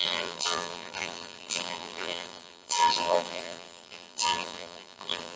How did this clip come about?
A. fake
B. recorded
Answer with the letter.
A